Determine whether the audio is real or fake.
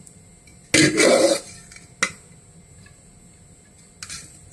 real